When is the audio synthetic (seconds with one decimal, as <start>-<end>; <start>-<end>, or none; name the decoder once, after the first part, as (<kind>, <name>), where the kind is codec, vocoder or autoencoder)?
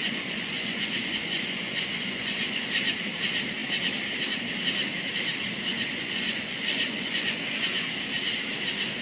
0.0-2.7 (vocoder, Vocos); 5.7-7.9